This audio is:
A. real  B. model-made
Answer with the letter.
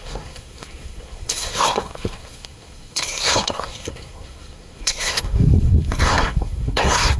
B